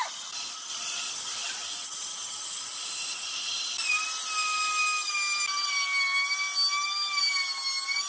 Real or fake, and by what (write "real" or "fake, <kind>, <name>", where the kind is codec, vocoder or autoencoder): real